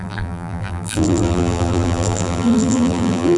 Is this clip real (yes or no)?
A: no